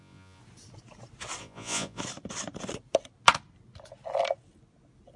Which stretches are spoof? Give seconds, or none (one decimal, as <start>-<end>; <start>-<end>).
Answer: 0.0-0.4; 1.4-2.0